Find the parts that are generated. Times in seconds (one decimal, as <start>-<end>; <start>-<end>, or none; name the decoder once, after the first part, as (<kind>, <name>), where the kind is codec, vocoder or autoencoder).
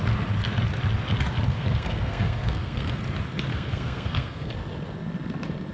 1.5-3.0 (codec, SNAC); 3.5-4.5